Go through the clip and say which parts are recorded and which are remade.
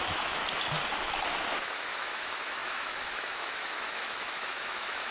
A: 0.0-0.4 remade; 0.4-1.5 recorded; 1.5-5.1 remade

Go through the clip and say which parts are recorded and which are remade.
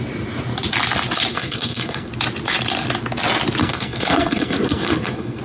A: 0.0-1.3 recorded; 1.3-2.1 remade; 2.1-3.6 recorded; 3.6-5.4 remade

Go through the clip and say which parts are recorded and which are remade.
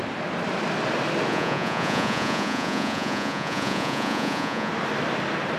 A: 0.0-1.3 recorded; 1.3-4.7 remade; 4.7-5.6 recorded